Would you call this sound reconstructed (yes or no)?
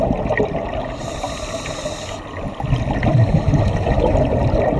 no